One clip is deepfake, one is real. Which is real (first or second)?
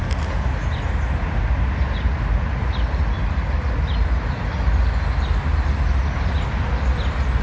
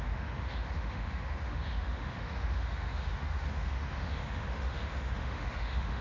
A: first